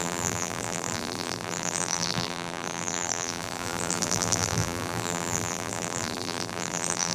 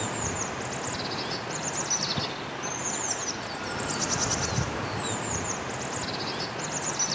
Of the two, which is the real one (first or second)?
second